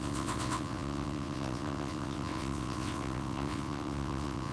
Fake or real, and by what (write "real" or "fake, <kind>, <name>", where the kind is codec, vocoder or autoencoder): fake, vocoder, WaveNeXt